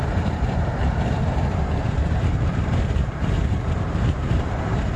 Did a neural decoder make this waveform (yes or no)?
yes